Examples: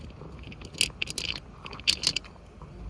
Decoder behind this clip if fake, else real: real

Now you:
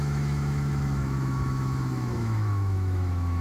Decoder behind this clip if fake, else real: fake, autoencoder, DAC-VAE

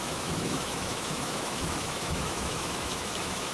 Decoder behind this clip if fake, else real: fake, autoencoder, DAC-VAE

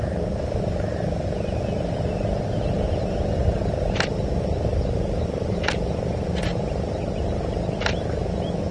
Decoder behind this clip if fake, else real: real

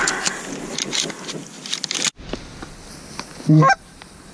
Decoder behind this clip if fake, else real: real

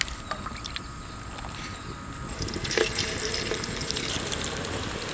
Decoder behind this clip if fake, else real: real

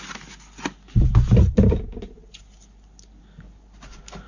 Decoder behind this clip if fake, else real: real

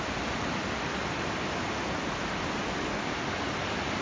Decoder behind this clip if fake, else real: real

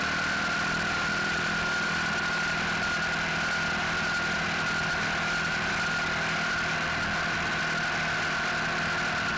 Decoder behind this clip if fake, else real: real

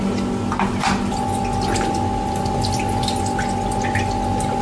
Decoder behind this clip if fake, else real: real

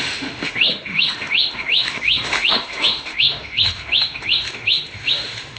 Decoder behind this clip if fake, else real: fake, autoencoder, DAC-VAE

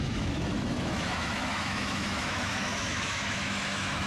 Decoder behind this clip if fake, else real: fake, autoencoder, DAC-VAE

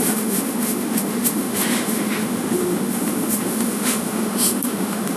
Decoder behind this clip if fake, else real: fake, autoencoder, DAC-VAE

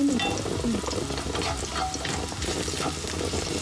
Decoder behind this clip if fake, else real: real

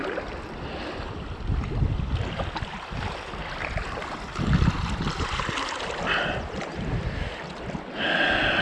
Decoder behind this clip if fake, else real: real